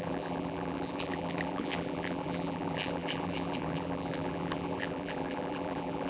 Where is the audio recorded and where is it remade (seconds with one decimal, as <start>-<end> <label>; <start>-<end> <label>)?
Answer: 0.0-6.1 remade